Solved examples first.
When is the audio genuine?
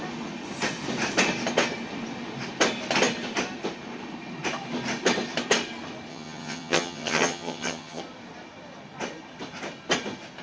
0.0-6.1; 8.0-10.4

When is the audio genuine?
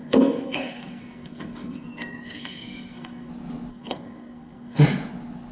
3.3-3.7; 4.8-5.5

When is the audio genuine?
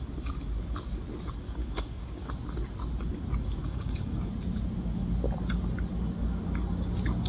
0.0-1.6; 2.3-3.6; 4.3-7.3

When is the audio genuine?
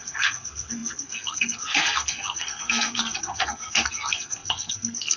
none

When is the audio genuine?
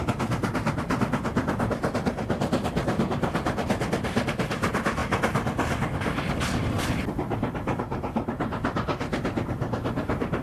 5.0-7.1